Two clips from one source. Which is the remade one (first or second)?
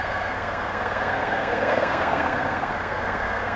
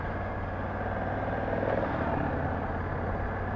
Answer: first